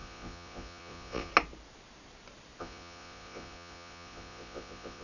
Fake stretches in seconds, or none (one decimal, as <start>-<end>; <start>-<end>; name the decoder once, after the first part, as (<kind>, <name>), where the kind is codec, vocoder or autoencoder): 0.0-1.3 (vocoder, Vocos); 2.6-5.0